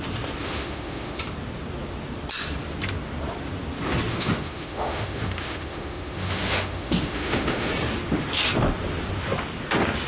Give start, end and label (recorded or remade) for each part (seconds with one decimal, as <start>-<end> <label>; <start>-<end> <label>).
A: 0.0-0.4 recorded; 0.4-1.2 remade; 1.2-4.1 recorded; 4.1-7.7 remade; 7.7-10.1 recorded